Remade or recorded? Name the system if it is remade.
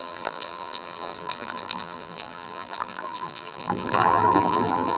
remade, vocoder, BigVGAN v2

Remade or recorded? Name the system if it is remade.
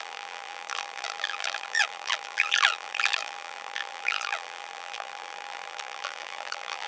remade, vocoder, BigVGAN v2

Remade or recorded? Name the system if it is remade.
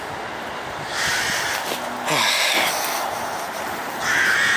recorded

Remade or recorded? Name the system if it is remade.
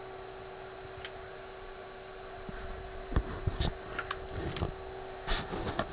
recorded